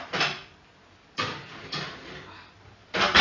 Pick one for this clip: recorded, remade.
recorded